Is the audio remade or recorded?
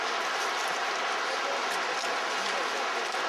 recorded